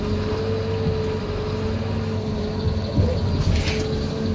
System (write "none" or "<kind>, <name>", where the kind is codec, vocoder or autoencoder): none